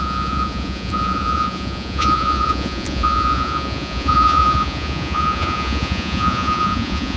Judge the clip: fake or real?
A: fake